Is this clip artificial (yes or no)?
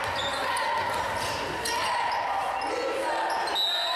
no